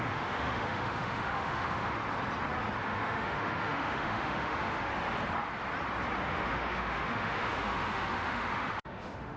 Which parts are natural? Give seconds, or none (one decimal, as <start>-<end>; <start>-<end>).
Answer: 2.0-2.8; 4.9-6.2